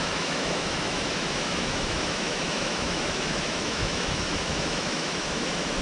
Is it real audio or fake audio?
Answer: fake